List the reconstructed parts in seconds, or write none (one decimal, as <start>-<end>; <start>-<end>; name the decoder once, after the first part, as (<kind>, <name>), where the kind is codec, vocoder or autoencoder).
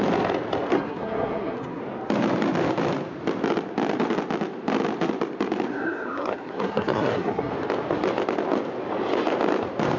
0.7-1.8 (codec, SNAC); 5.7-7.5